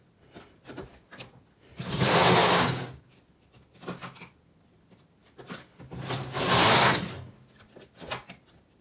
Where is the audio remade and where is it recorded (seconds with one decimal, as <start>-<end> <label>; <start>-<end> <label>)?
0.0-2.4 recorded; 2.4-3.2 remade; 3.2-8.8 recorded